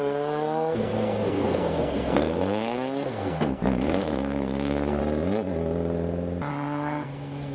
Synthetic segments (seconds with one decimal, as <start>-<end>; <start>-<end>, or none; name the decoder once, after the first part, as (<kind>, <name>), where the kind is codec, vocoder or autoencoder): 0.0-5.0 (codec, SNAC); 6.5-7.5